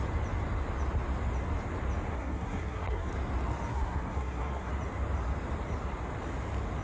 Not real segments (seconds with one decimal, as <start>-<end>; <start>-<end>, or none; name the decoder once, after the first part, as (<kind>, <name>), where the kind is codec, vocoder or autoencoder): 2.1-3.1 (codec, SNAC); 3.7-4.7